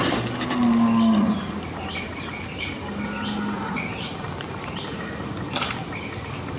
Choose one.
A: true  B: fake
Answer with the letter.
A